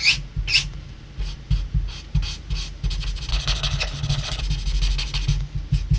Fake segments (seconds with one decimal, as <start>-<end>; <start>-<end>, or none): 3.3-4.4